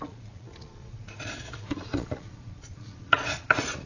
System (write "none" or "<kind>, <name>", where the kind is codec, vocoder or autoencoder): vocoder, Vocos